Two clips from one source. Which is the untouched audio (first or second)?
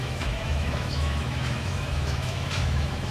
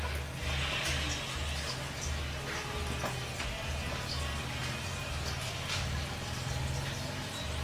second